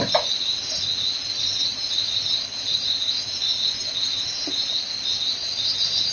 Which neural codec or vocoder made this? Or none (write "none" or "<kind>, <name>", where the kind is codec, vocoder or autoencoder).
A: none